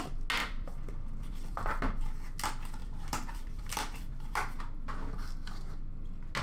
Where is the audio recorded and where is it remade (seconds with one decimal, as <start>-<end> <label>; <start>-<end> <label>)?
0.0-0.4 recorded; 0.4-1.7 remade; 1.7-2.8 recorded; 2.8-4.6 remade; 4.6-6.4 recorded

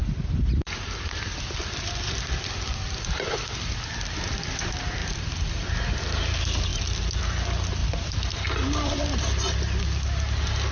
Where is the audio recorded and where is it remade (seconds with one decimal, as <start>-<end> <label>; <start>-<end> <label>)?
0.0-4.1 remade; 4.1-5.0 recorded; 5.0-6.2 remade; 6.2-6.7 recorded; 6.7-7.2 remade; 7.2-7.8 recorded; 7.8-9.2 remade; 9.2-10.7 recorded

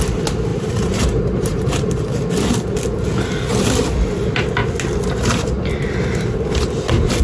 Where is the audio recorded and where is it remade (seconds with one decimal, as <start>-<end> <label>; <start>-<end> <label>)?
0.0-0.5 recorded; 0.5-2.3 remade; 2.3-7.2 recorded

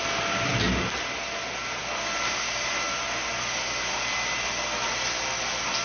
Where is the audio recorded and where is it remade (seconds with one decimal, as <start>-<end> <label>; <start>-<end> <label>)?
0.0-5.8 recorded

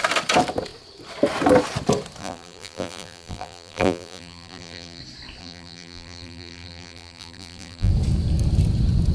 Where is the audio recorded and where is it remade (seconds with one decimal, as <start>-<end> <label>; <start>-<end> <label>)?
0.0-2.2 recorded; 2.2-5.0 remade; 5.0-5.4 recorded; 5.4-7.9 remade; 7.9-9.1 recorded

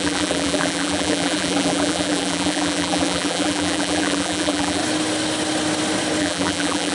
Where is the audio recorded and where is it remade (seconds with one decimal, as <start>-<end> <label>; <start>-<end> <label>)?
0.0-4.8 remade; 4.8-6.2 recorded; 6.2-6.9 remade

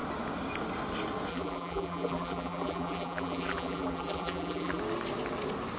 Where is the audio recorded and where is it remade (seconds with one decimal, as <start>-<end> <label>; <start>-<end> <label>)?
0.0-1.3 recorded; 1.3-4.8 remade; 4.8-5.8 recorded